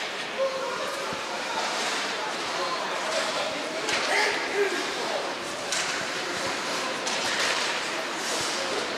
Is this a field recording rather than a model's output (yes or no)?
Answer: no